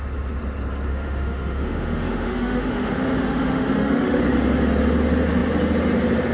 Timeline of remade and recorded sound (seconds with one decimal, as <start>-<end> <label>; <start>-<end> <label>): 0.0-0.9 recorded; 0.9-4.2 remade; 4.2-6.3 recorded